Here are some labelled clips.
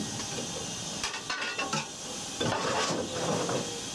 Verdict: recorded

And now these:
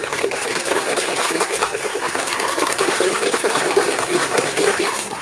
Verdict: remade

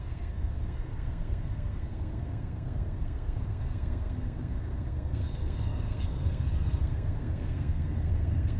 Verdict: remade